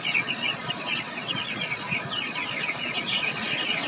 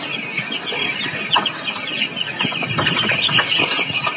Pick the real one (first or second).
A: second